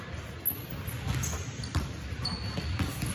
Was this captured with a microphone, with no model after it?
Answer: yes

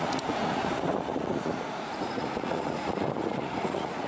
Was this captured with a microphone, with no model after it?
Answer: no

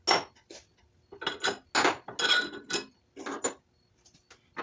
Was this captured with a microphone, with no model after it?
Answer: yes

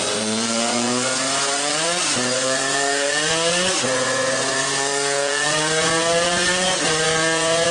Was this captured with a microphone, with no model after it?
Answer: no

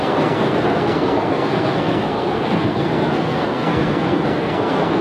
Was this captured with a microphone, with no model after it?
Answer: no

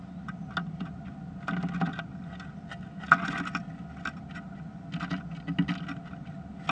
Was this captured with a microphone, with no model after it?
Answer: yes